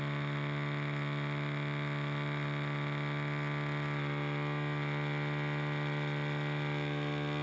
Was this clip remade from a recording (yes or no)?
no